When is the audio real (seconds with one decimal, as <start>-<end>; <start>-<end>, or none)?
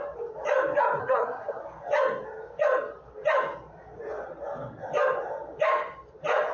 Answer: 0.0-1.0; 1.6-6.5